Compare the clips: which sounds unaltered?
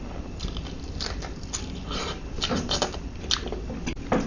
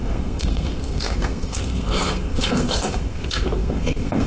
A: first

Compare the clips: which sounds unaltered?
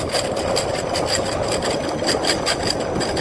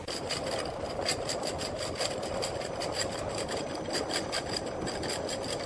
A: first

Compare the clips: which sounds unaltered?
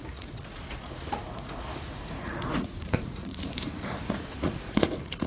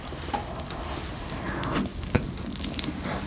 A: second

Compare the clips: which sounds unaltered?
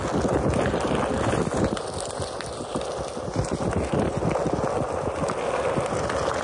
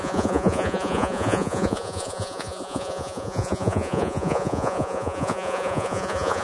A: first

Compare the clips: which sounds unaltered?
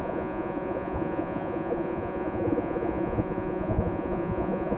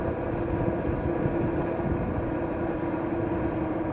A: second